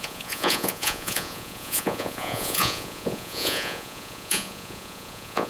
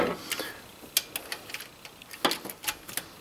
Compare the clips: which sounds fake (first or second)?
first